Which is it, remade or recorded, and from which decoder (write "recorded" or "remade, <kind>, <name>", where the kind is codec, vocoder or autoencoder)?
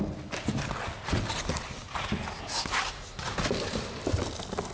recorded